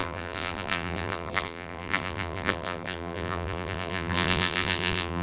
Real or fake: fake